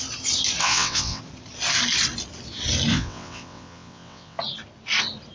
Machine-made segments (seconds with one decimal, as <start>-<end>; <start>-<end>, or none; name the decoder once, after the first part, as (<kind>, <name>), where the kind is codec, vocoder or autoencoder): 0.6-1.2 (vocoder, WaveNeXt); 2.9-4.4